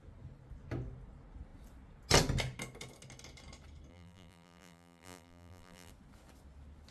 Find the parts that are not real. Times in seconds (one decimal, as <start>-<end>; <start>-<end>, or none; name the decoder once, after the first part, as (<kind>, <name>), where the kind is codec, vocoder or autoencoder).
3.9-5.9 (vocoder, BigVGAN v2)